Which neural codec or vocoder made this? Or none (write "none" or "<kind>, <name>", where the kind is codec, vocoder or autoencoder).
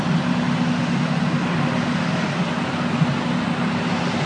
none